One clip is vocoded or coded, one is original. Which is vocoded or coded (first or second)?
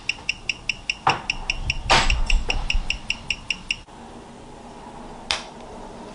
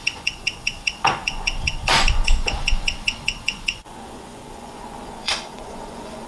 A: second